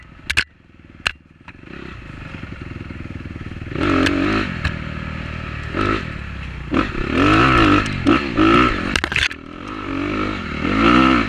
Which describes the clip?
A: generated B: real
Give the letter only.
B